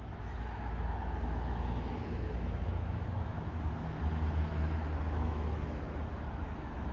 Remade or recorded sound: remade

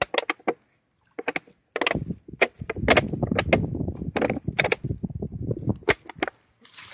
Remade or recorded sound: recorded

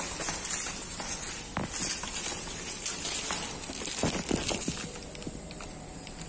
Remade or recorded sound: recorded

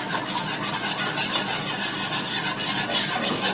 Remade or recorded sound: recorded